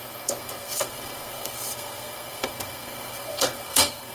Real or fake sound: fake